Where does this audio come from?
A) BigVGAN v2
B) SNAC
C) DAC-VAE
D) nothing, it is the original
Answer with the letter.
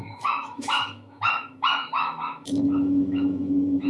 C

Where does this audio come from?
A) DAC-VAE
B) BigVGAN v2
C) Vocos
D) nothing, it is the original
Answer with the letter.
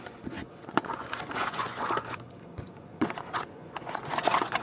C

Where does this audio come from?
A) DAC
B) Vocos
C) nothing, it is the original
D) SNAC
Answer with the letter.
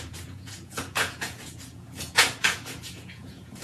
B